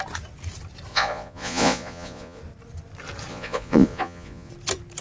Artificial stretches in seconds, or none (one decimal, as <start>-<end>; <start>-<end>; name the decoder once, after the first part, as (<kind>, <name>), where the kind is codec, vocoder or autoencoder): 0.9-2.4 (vocoder, Vocos); 3.3-4.5